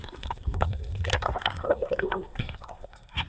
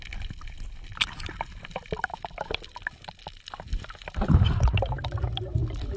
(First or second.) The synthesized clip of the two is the first